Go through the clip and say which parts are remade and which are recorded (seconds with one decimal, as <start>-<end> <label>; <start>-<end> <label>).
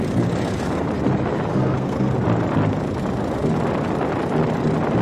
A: 0.0-1.5 recorded; 1.5-2.1 remade; 2.1-5.0 recorded